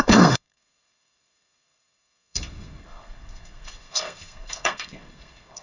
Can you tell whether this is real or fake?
fake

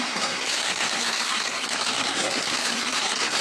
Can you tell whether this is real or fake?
fake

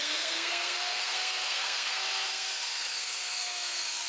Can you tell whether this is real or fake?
fake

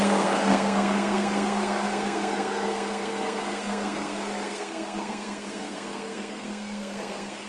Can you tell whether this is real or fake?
fake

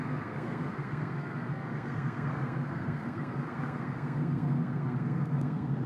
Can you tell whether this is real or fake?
fake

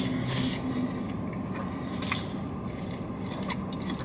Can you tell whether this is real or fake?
real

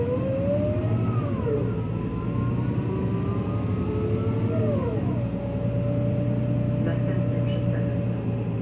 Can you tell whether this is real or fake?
real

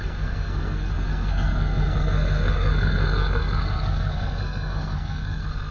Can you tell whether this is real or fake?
fake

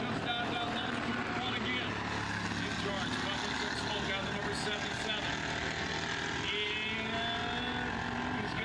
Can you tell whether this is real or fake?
real